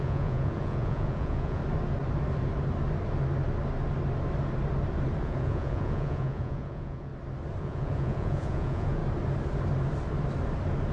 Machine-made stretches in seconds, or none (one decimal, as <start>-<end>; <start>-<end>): 0.0-1.6; 5.2-7.1; 7.6-9.0